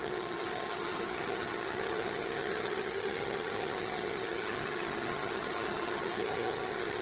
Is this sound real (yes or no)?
no